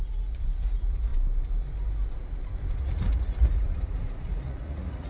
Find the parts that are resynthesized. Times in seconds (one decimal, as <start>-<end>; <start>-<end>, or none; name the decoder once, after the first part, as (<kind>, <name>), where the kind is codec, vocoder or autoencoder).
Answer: 0.0-1.1 (vocoder, Vocos); 2.8-5.1